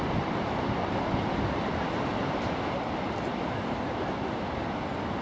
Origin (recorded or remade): recorded